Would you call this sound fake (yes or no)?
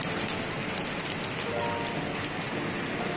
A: no